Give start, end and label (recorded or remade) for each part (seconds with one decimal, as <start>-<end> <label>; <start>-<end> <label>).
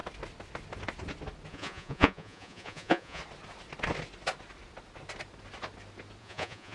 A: 0.0-1.5 recorded; 1.5-3.2 remade; 3.2-6.2 recorded; 6.2-6.7 remade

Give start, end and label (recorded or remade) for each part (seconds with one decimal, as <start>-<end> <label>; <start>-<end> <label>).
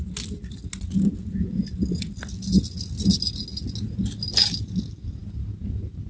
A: 0.0-6.1 recorded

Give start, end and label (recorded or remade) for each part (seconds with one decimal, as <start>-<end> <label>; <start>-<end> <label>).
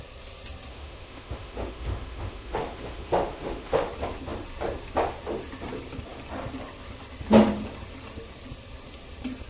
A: 0.0-0.7 recorded; 0.7-3.9 remade; 3.9-9.5 recorded